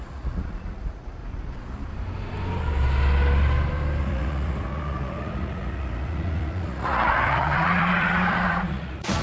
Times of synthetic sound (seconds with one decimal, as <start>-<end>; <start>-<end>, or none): 0.0-1.2; 4.0-9.2

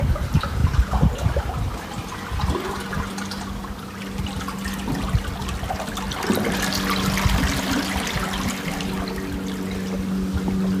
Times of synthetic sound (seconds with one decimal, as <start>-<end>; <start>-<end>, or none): none

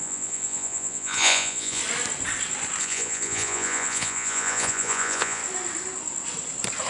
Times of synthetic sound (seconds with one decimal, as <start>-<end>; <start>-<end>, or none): 0.0-1.8; 2.8-5.4

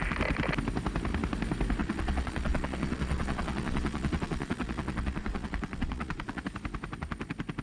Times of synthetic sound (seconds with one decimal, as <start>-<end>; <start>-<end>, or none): 1.8-6.4

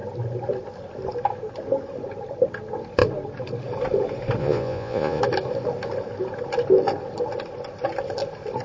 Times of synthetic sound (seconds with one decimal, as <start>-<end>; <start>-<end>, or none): 4.4-5.2

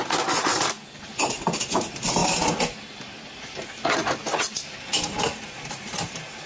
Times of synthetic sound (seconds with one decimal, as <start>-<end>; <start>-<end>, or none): none

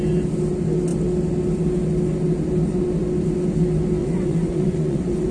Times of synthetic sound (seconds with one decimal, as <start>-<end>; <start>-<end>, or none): 4.0-5.3